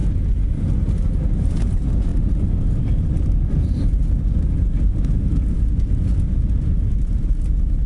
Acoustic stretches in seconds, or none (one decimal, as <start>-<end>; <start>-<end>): 0.9-2.1; 5.7-7.9